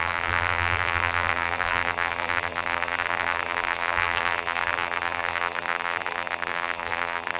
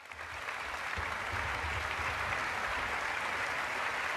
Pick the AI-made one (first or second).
first